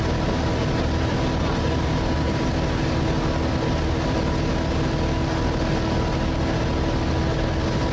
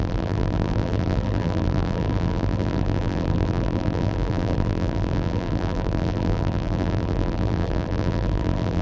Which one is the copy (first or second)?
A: second